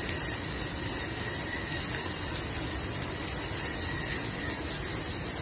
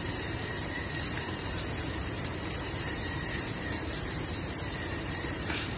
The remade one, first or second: second